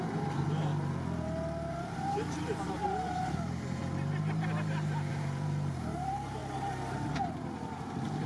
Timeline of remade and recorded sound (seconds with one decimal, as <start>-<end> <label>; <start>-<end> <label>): 0.0-0.7 remade; 0.7-1.7 recorded; 1.7-3.8 remade; 3.8-5.1 recorded; 5.1-6.4 remade; 6.4-7.8 recorded; 7.8-8.3 remade